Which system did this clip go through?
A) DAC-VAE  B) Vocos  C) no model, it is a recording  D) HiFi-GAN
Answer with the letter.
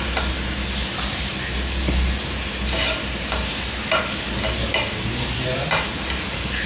C